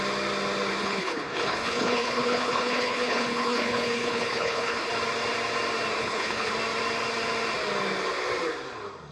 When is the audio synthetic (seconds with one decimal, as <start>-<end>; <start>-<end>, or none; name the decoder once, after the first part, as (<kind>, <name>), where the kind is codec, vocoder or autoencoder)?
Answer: 0.8-4.9 (codec, HILCodec); 6.0-6.5